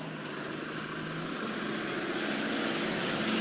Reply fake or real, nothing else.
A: real